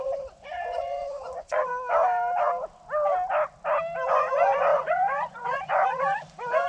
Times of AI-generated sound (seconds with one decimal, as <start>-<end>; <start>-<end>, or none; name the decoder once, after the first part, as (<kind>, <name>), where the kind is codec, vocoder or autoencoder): 0.0-1.7 (vocoder, Vocos); 4.1-6.7